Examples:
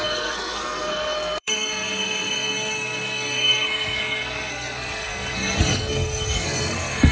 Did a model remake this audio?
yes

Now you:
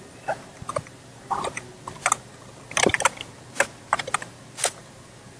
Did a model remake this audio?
no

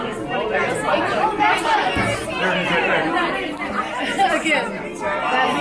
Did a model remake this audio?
no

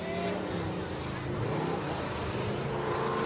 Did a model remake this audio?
no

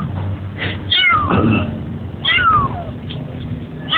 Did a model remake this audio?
no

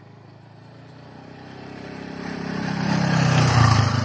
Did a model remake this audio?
yes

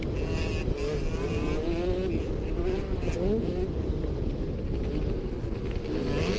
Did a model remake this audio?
no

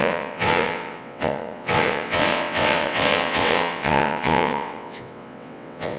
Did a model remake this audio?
yes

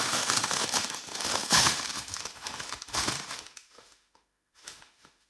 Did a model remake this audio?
yes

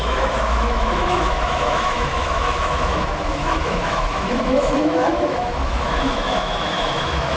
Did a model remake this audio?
yes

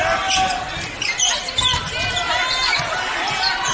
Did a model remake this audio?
no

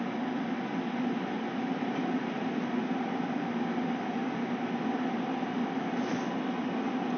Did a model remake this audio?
no